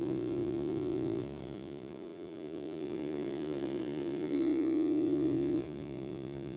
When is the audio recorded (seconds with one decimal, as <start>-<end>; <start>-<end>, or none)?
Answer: none